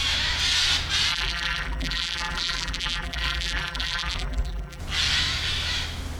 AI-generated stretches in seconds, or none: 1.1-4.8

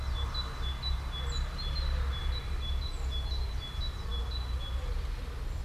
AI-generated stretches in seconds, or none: none

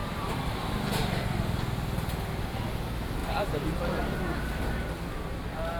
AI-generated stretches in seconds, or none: 0.0-0.5; 1.0-1.6; 3.2-4.6